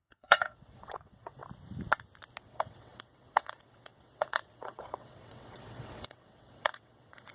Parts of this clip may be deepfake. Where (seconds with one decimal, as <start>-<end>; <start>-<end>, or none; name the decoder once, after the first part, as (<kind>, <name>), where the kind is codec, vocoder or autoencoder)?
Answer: 0.0-1.4 (vocoder, WaveNeXt); 2.4-7.3